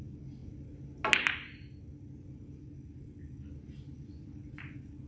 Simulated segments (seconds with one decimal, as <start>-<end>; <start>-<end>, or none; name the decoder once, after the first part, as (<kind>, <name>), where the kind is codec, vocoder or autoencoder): none

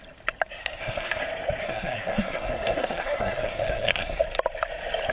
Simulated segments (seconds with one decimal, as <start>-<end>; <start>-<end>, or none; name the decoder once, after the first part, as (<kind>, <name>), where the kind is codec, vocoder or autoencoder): 0.6-1.2 (codec, SNAC); 1.6-4.2

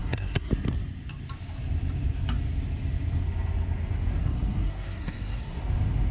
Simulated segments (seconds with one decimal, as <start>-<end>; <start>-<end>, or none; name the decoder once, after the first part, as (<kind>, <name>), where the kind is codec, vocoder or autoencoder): 0.0-0.5 (codec, SNAC); 4.2-5.6

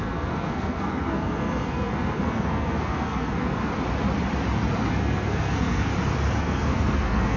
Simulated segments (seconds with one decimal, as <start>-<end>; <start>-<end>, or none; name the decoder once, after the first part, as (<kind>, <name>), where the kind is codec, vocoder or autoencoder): 0.0-3.7 (codec, SNAC); 4.9-5.9; 6.4-7.4

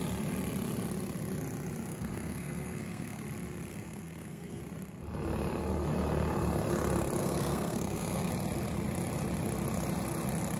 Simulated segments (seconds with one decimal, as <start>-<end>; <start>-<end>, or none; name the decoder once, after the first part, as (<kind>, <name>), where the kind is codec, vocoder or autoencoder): 1.9-3.2 (codec, SNAC); 3.7-4.6; 7.2-8.3

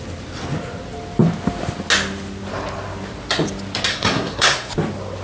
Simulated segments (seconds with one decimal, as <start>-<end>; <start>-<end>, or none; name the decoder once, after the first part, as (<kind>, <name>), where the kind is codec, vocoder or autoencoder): 3.9-4.7 (codec, SNAC)